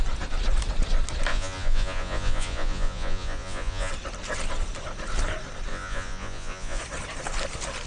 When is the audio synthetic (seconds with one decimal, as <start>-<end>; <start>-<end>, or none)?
1.3-3.9; 5.7-6.8